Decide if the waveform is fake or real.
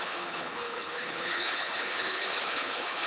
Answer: fake